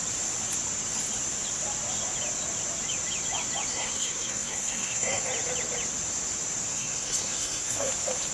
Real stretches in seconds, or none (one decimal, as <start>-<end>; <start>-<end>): 0.0-3.7; 5.2-6.7; 7.9-8.3